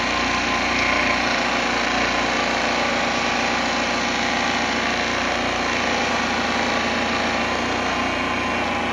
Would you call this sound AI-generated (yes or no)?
no